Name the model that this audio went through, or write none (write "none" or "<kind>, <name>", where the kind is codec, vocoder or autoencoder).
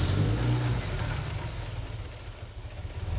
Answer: none